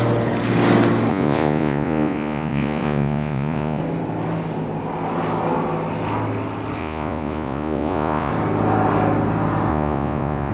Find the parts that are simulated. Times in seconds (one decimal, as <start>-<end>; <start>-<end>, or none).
1.1-3.8; 6.8-8.3; 9.7-10.5